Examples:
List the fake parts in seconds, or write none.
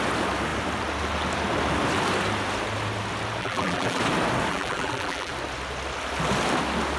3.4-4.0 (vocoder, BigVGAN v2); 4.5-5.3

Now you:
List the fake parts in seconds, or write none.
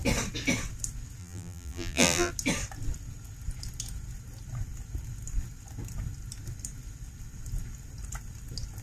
1.2-2.3 (vocoder, BigVGAN v2)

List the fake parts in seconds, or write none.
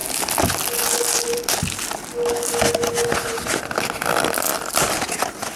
none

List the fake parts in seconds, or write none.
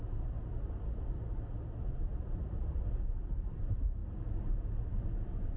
0.0-4.0 (vocoder, BigVGAN v2); 5.0-5.6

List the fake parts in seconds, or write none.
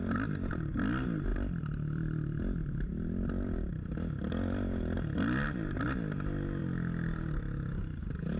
1.3-3.8 (vocoder, BigVGAN v2)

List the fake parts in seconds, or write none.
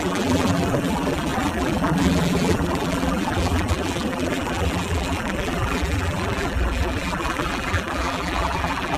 0.0-9.0 (vocoder, BigVGAN v2)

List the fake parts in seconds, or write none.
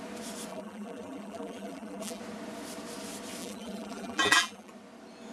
0.5-2.2 (vocoder, BigVGAN v2); 3.4-4.7